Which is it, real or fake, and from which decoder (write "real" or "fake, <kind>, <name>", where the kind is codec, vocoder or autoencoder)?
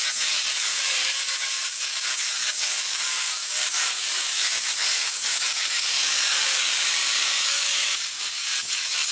fake, codec, DAC